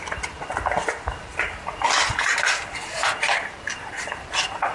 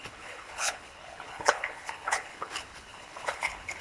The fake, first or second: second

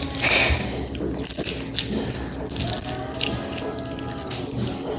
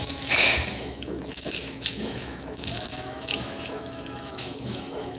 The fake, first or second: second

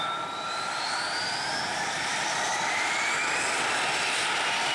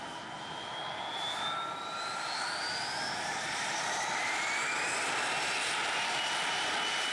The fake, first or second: first